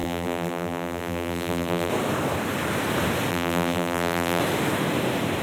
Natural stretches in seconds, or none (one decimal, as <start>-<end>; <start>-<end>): 1.9-3.3; 4.4-5.4